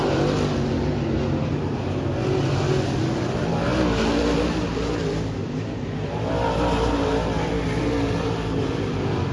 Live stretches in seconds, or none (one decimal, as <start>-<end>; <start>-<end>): 0.0-9.3